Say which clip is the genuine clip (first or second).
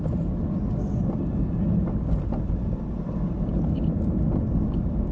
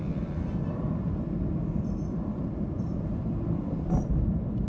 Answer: first